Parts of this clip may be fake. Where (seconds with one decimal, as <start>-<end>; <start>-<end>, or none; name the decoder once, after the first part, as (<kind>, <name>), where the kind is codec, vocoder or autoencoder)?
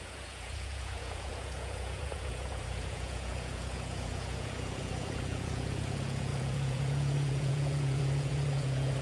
0.0-9.0 (vocoder, Vocos)